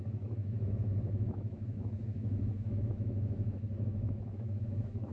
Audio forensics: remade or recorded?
remade